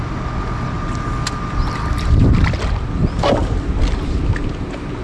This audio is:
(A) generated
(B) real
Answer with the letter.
B